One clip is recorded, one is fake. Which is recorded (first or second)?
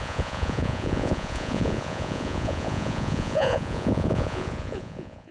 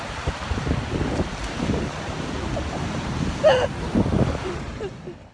second